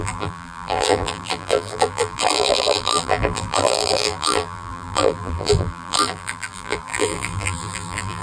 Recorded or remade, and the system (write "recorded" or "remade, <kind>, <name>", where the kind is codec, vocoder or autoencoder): remade, vocoder, BigVGAN v2